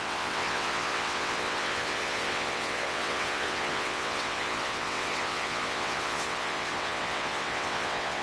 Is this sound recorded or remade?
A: remade